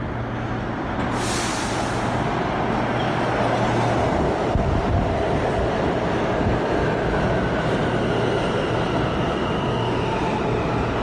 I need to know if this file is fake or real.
real